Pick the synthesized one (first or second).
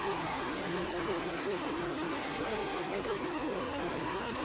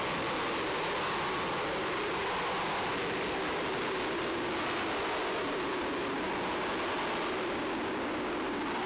first